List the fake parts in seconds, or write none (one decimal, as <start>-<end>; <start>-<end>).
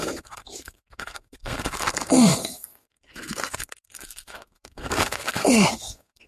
0.0-6.3